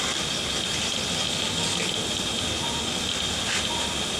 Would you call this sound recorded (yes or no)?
yes